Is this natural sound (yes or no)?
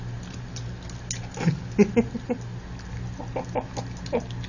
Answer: yes